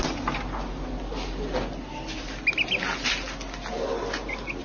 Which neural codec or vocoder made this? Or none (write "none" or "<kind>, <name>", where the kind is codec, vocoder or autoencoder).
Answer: none